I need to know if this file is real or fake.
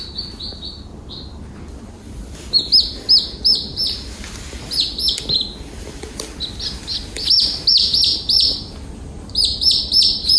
real